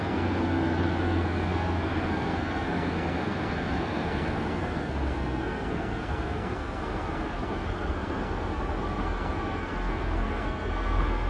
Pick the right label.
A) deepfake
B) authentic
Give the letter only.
A